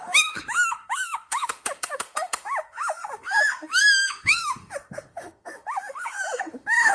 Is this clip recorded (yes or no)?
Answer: no